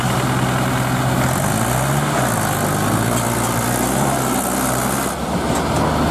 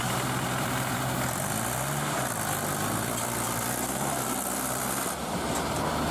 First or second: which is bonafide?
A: first